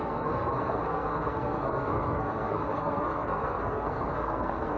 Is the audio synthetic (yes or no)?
yes